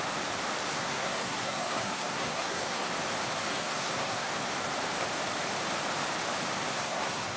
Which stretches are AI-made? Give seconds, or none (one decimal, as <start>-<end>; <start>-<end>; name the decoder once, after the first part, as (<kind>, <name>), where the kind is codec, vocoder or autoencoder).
0.6-2.9 (codec, SNAC); 3.5-4.3; 6.7-7.4